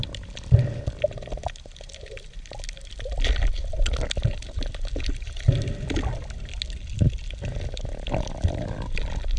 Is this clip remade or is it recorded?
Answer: recorded